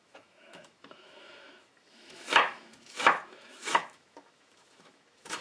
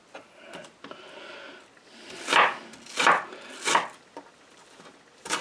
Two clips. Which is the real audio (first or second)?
second